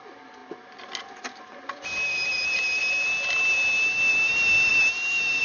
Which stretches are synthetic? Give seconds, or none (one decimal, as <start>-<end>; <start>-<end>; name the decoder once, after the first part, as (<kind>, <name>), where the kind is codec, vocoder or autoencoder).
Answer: none